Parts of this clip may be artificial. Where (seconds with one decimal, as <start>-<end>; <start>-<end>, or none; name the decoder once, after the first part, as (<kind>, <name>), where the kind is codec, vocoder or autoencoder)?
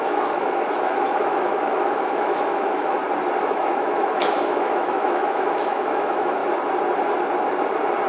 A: 0.0-3.0 (autoencoder, DAC-VAE); 3.5-6.4